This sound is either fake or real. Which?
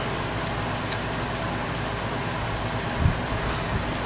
real